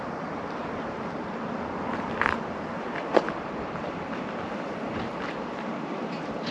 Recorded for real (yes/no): no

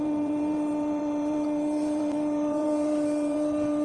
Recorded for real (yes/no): no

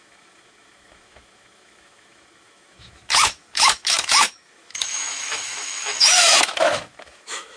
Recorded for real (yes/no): no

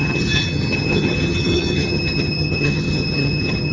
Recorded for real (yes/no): no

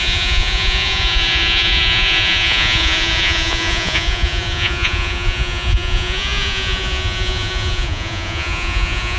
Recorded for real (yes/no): no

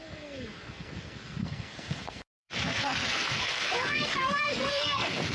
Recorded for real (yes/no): no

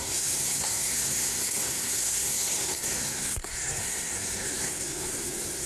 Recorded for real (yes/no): no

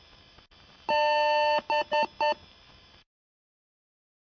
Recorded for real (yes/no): yes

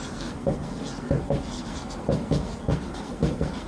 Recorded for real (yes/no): no